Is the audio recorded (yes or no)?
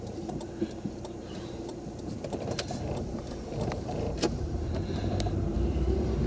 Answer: no